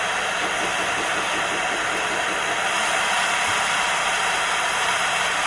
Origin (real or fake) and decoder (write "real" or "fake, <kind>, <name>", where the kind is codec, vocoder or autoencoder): real